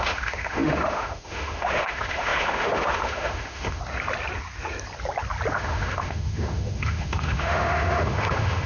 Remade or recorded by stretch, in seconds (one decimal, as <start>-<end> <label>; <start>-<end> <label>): 0.0-3.8 remade; 3.8-5.5 recorded; 5.5-8.7 remade